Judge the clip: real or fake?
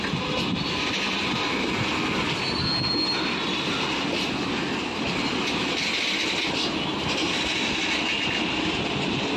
real